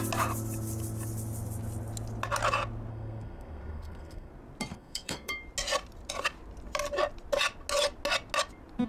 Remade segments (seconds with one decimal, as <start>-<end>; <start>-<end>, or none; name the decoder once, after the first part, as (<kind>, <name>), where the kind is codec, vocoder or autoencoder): 2.9-4.3 (codec, SNAC); 4.7-5.3